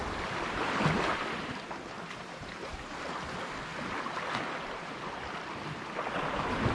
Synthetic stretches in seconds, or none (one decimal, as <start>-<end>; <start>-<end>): none